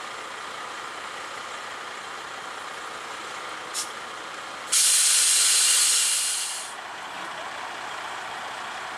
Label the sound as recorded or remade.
recorded